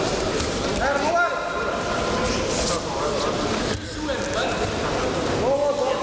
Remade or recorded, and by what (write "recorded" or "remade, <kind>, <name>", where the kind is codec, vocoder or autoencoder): recorded